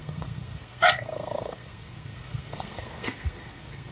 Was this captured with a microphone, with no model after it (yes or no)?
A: no